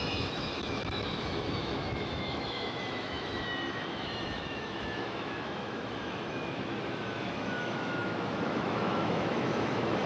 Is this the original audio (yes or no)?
no